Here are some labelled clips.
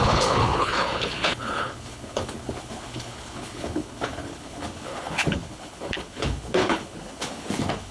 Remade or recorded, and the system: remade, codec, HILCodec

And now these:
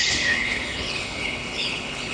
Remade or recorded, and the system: remade, codec, HILCodec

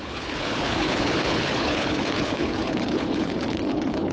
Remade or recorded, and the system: remade, codec, HILCodec